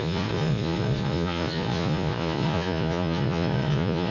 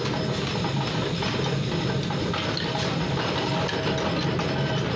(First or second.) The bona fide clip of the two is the second